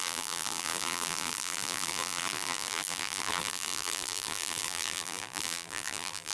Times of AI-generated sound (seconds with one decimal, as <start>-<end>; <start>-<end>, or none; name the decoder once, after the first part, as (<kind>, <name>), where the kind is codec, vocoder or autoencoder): 0.0-6.3 (vocoder, BigVGAN v2)